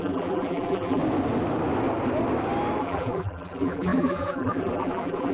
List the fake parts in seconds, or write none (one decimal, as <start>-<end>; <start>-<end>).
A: 0.0-1.0; 2.8-5.3